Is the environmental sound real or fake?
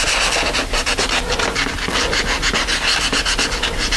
real